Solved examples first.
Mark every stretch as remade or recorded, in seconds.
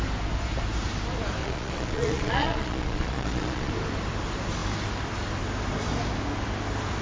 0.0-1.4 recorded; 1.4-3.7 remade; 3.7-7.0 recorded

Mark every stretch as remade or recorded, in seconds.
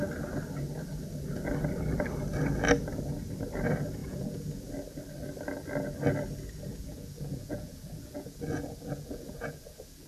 0.0-4.0 recorded; 4.0-4.7 remade; 4.7-6.7 recorded; 6.7-10.1 remade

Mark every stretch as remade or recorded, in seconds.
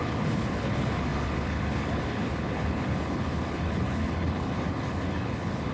0.0-5.7 remade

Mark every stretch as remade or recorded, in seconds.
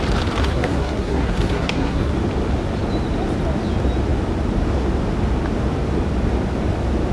0.0-0.4 recorded; 0.4-2.1 remade; 2.1-7.1 recorded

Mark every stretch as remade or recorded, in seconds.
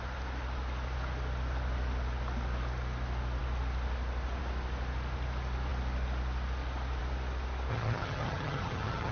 0.0-7.7 recorded; 7.7-9.1 remade